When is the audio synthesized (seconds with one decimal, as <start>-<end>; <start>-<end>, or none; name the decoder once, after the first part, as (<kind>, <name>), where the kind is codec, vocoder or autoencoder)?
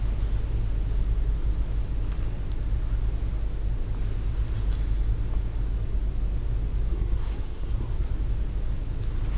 6.9-8.1 (codec, SNAC)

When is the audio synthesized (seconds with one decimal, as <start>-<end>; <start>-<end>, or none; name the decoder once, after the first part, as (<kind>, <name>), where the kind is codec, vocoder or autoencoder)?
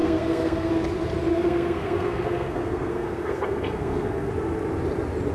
0.0-0.7 (codec, SNAC); 1.3-4.3